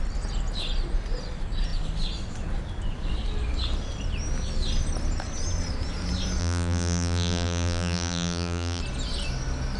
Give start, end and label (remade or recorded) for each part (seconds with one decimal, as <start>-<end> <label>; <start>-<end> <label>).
0.0-6.4 recorded; 6.4-8.8 remade; 8.8-9.8 recorded